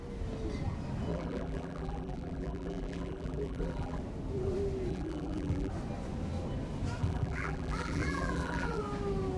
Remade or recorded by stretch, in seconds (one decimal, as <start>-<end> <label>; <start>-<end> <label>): 0.0-1.1 recorded; 1.1-4.0 remade; 4.0-4.9 recorded; 4.9-5.7 remade; 5.7-7.0 recorded; 7.0-8.8 remade; 8.8-9.4 recorded